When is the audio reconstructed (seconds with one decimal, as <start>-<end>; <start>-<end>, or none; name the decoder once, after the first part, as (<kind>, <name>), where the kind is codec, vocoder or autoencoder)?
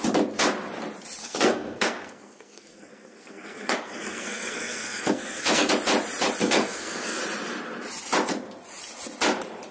1.2-5.7 (codec, SNAC); 6.4-7.2